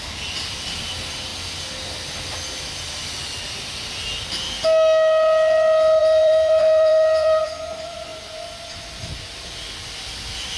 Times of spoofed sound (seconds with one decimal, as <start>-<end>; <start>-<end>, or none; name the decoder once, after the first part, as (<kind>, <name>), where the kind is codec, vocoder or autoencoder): 0.0-1.3 (vocoder, BigVGAN v2); 6.0-8.1; 9.1-10.6